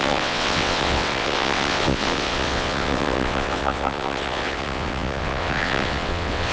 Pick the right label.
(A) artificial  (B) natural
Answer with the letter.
A